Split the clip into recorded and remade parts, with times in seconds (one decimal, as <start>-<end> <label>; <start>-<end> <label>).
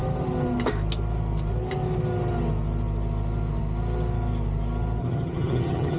0.0-5.0 recorded; 5.0-6.0 remade